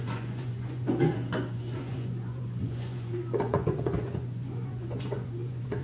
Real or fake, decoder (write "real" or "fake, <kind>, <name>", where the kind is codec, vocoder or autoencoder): fake, vocoder, Vocos